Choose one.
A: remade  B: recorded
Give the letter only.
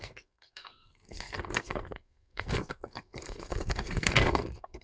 A